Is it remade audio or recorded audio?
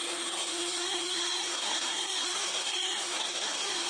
remade